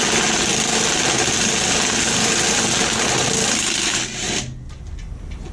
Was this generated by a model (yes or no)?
no